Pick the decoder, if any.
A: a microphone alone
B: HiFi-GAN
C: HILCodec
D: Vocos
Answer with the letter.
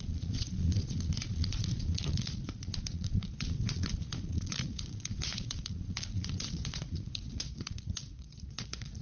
D